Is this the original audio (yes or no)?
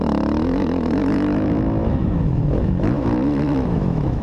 no